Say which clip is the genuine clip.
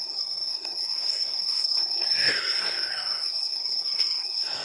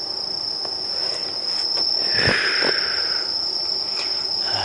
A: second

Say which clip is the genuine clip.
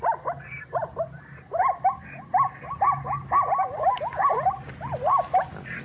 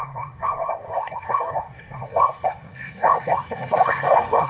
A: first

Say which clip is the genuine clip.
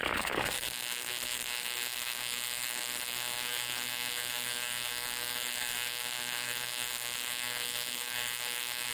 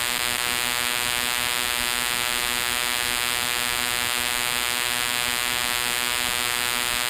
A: second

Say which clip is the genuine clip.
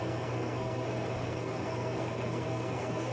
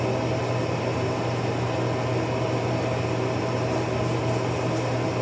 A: second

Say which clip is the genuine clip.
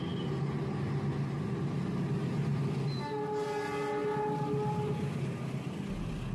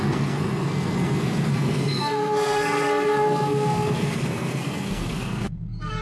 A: first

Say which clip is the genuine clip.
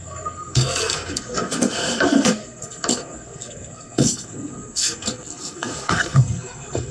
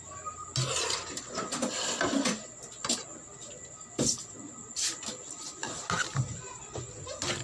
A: second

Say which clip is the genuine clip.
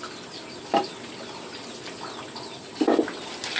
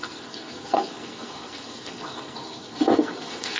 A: first